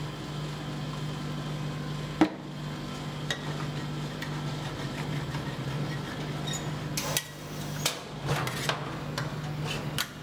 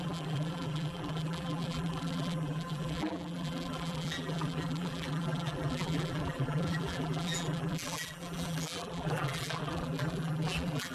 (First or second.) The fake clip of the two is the second